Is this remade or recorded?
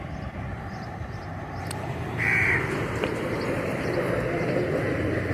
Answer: remade